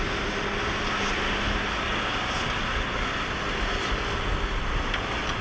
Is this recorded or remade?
recorded